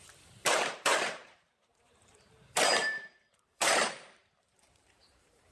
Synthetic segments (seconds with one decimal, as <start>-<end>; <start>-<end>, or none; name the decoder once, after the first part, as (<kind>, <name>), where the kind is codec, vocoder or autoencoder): 0.0-5.5 (vocoder, BigVGAN v2)